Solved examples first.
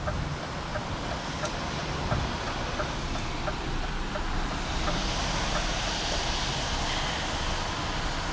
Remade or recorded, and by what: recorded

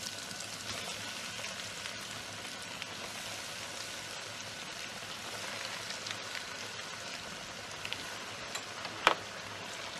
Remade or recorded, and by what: recorded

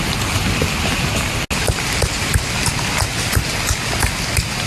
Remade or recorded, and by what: recorded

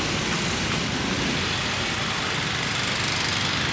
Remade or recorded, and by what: recorded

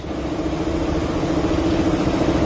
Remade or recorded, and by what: recorded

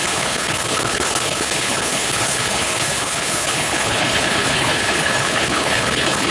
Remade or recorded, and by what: remade, codec, HILCodec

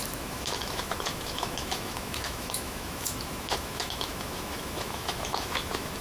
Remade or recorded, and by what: remade, autoencoder, DAC-VAE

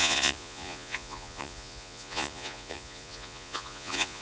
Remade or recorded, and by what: remade, vocoder, Vocos